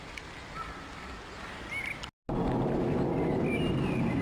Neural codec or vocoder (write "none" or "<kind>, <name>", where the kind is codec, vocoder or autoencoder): none